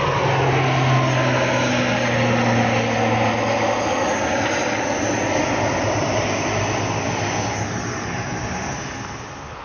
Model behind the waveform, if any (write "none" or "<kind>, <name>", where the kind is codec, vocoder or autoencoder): none